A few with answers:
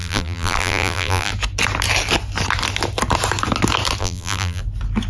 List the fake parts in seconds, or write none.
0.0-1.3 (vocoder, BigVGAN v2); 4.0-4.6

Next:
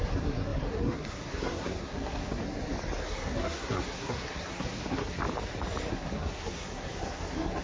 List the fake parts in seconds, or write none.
0.0-2.4 (codec, SNAC); 3.1-5.2; 5.9-7.6

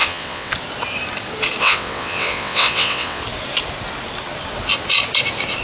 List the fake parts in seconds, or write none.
0.0-0.5 (vocoder, WaveNeXt); 1.6-3.2

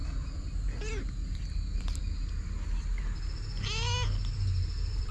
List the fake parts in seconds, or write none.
none

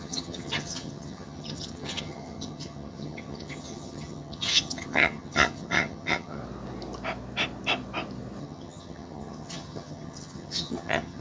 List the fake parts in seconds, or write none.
0.0-6.4 (vocoder, HiFi-GAN); 8.4-11.2